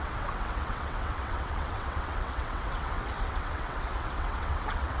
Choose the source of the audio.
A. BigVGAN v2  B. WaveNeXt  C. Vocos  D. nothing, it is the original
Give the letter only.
B